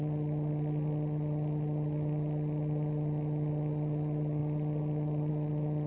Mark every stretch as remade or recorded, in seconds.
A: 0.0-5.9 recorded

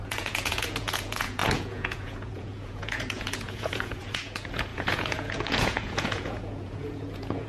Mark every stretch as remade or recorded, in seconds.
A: 0.0-7.5 remade

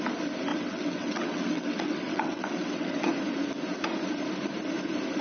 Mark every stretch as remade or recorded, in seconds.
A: 0.0-0.5 recorded; 0.5-3.1 remade; 3.1-5.2 recorded

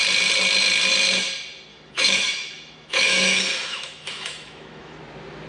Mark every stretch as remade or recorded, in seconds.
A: 0.0-1.7 recorded; 1.7-5.0 remade; 5.0-5.5 recorded

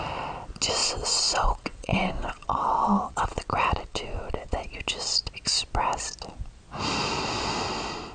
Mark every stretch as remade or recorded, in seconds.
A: 0.0-0.8 recorded; 0.8-3.4 remade; 3.4-3.9 recorded; 3.9-4.7 remade; 4.7-8.1 recorded

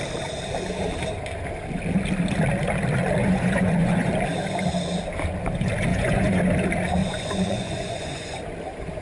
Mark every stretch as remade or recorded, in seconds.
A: 0.0-3.2 recorded; 3.2-4.1 remade; 4.1-5.9 recorded; 5.9-6.4 remade; 6.4-7.0 recorded; 7.0-8.4 remade; 8.4-9.0 recorded